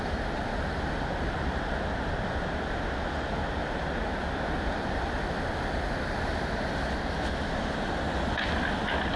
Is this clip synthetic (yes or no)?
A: no